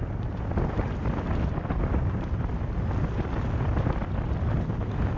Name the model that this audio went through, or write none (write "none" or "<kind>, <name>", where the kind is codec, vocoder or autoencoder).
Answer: none